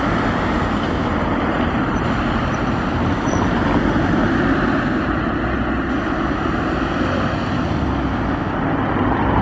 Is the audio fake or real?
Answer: real